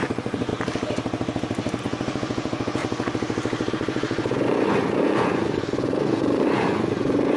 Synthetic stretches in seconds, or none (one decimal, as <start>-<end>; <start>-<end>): 0.0-0.5; 1.8-2.8; 3.7-7.4